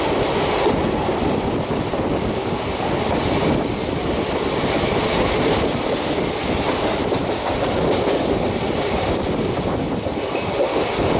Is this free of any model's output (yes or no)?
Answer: yes